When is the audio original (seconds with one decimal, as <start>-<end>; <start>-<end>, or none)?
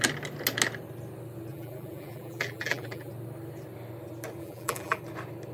0.0-1.5; 3.1-4.4; 5.0-5.5